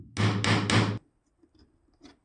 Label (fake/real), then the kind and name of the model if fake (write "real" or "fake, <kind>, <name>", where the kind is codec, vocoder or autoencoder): real